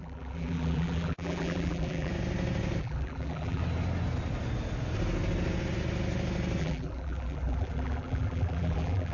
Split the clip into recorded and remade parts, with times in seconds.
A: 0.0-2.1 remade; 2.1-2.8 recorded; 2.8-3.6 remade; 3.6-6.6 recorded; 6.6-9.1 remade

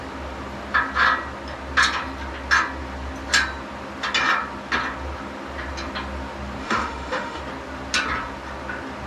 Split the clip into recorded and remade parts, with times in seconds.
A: 0.0-6.6 recorded; 6.6-7.4 remade; 7.4-9.1 recorded

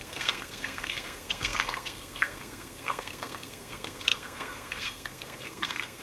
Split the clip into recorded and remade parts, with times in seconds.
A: 0.0-6.0 remade

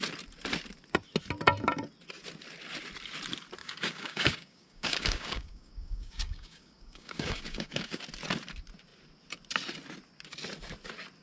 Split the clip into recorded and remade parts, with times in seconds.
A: 0.0-3.6 recorded; 3.6-8.0 remade; 8.0-11.2 recorded

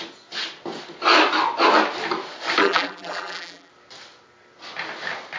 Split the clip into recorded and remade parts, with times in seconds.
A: 0.0-2.6 recorded; 2.6-3.7 remade; 3.7-5.4 recorded

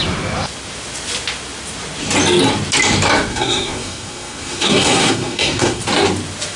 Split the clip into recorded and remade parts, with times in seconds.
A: 0.0-3.3 recorded; 3.3-5.8 remade; 5.8-6.6 recorded

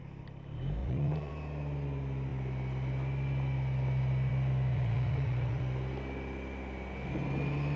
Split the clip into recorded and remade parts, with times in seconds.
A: 0.0-0.8 recorded; 0.8-1.3 remade; 1.3-4.7 recorded; 4.7-5.6 remade; 5.6-7.8 recorded

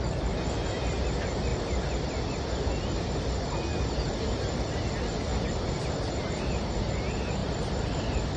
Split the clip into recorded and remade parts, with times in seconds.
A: 0.0-8.4 recorded